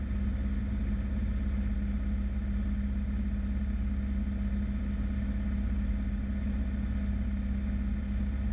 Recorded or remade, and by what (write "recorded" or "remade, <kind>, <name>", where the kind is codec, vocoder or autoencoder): recorded